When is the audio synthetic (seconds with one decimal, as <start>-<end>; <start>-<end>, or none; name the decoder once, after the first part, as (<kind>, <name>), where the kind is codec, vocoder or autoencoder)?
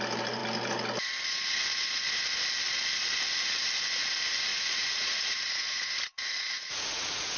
4.5-7.4 (vocoder, Vocos)